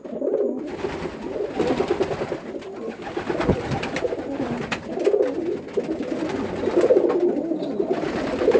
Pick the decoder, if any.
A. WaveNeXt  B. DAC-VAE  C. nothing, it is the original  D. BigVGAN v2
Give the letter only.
C